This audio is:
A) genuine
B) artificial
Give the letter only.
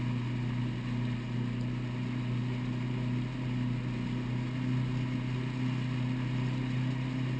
A